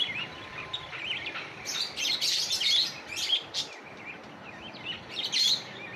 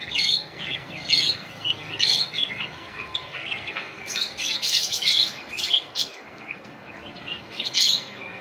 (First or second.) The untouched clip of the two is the first